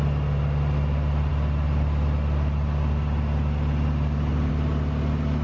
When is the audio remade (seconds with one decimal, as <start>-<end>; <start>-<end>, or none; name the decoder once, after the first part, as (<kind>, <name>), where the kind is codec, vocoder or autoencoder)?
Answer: none